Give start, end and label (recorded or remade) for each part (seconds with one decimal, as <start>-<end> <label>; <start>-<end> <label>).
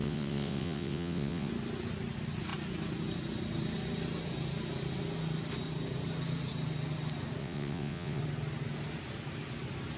0.0-1.5 remade; 1.5-7.4 recorded; 7.4-8.2 remade; 8.2-10.0 recorded